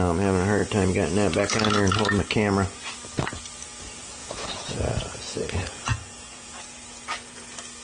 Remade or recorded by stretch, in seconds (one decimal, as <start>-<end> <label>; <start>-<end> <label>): 0.0-4.2 recorded; 4.2-6.6 remade; 6.6-7.8 recorded